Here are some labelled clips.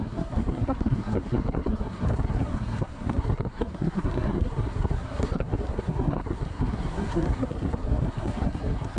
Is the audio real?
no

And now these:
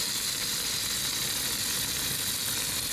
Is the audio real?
yes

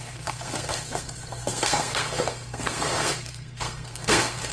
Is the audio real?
no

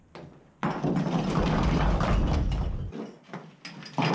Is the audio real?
yes